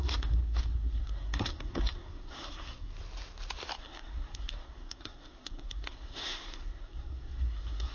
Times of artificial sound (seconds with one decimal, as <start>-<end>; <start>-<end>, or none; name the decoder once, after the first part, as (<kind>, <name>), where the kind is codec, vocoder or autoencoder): 0.0-2.9 (codec, SNAC); 3.8-7.9